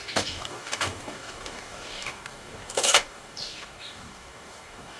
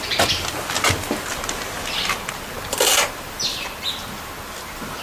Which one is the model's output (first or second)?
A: first